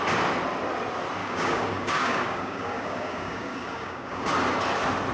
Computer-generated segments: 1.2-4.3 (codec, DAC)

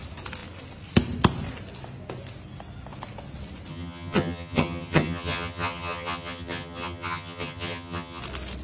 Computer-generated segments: 3.7-8.2 (vocoder, HiFi-GAN)

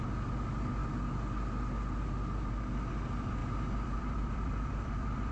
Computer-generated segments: 3.4-5.3 (vocoder, BigVGAN v2)